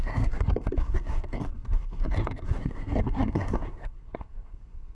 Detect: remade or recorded remade